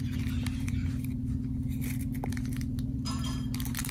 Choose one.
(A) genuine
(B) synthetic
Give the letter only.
B